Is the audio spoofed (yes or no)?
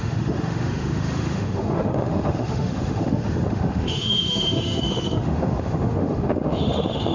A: yes